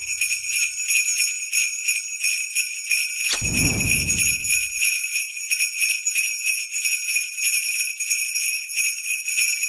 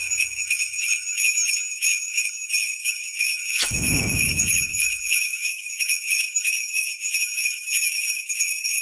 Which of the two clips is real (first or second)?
first